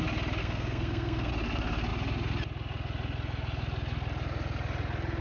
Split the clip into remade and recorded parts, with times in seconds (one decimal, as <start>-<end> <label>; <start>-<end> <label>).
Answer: 0.0-0.4 recorded; 0.4-1.3 remade; 1.3-5.2 recorded